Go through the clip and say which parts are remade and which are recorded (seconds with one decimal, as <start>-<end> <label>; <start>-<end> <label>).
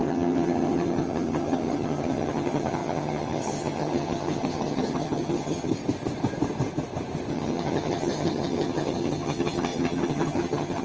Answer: 0.0-5.7 remade; 5.7-7.3 recorded; 7.3-10.8 remade